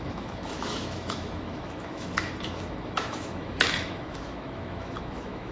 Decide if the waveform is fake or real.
fake